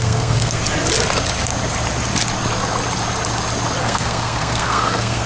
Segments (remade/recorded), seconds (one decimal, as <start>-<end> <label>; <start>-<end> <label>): 0.0-0.6 remade; 0.6-3.8 recorded; 3.8-5.3 remade